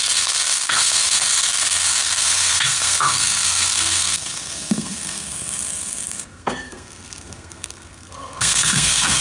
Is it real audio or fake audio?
fake